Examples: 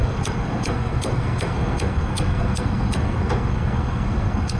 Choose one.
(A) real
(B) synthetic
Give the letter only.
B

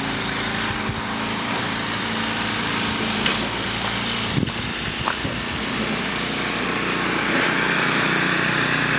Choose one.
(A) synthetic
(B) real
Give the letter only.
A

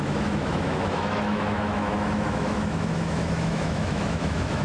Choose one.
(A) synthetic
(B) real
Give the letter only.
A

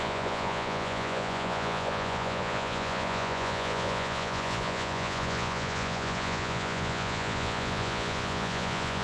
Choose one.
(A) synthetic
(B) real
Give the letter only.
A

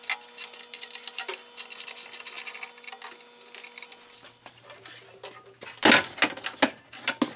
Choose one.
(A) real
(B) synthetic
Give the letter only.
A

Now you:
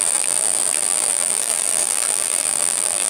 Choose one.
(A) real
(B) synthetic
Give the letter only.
B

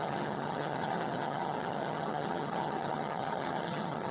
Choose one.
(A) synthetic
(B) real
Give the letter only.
A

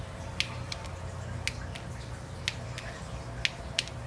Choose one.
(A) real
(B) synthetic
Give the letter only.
A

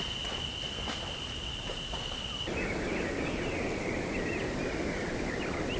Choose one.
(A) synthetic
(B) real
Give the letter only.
B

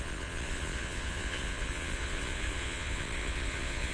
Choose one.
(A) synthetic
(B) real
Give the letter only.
A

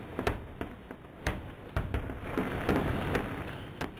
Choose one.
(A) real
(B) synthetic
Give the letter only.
A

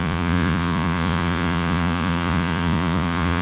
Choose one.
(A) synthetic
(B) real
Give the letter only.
A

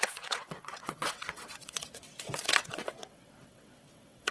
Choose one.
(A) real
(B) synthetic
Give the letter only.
B